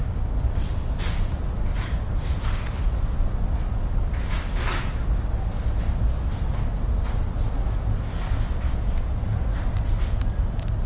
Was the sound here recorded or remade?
recorded